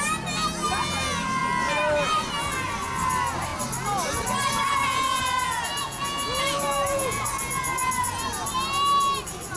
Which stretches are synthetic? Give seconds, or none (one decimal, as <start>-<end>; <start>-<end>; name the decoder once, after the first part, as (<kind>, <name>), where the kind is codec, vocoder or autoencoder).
5.8-7.3 (vocoder, Vocos)